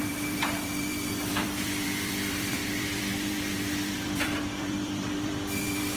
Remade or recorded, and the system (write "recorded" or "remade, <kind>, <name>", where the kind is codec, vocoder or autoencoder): remade, vocoder, BigVGAN v2